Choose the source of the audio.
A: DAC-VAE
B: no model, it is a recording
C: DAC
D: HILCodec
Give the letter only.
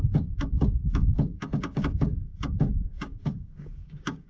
C